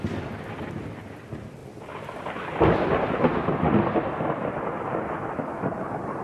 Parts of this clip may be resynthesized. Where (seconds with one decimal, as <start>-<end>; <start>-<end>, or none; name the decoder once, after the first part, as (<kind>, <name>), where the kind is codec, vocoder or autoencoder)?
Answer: none